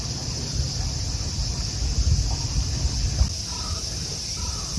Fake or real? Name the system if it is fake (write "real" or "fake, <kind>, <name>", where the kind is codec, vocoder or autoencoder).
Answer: real